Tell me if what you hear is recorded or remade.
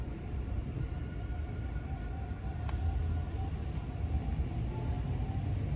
recorded